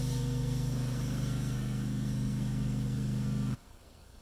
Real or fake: fake